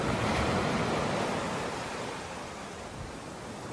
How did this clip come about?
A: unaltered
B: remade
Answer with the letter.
A